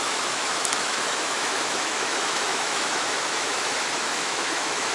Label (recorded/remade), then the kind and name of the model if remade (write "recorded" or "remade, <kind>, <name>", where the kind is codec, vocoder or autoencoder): remade, autoencoder, DAC-VAE